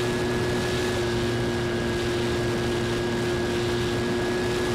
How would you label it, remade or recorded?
recorded